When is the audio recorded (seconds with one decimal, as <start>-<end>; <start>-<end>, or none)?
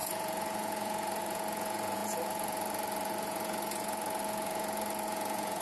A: none